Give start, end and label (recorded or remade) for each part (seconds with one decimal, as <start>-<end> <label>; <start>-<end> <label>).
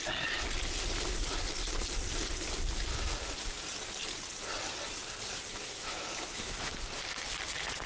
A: 0.0-5.5 recorded; 5.5-6.7 remade; 6.7-7.9 recorded